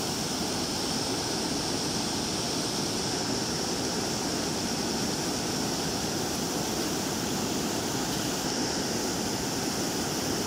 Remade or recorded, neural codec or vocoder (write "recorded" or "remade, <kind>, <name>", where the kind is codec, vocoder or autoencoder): recorded